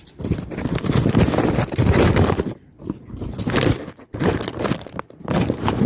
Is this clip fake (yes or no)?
no